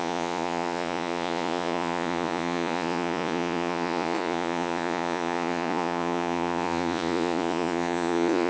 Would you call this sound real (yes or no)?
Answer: no